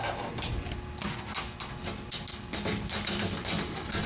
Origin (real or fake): real